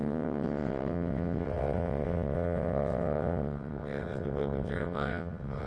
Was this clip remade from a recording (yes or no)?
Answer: yes